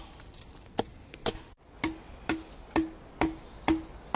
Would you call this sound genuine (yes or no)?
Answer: yes